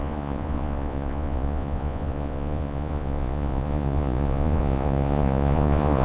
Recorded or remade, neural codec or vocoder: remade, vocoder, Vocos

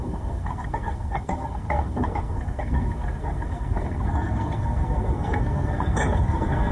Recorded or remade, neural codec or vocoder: remade, codec, SNAC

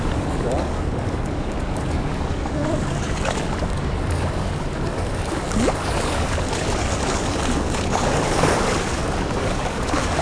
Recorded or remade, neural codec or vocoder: remade, codec, DAC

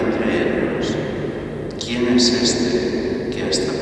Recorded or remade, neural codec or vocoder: recorded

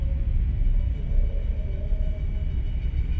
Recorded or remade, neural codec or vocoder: recorded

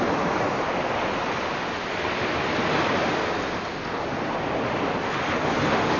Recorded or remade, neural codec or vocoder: recorded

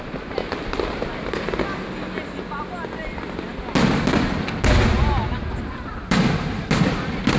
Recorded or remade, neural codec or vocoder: recorded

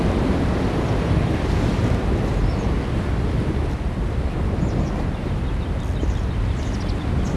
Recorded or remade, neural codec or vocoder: recorded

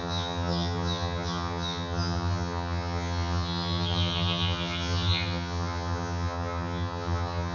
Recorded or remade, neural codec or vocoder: remade, vocoder, HiFi-GAN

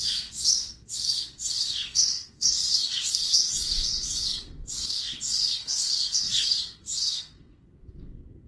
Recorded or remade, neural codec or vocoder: remade, codec, SNAC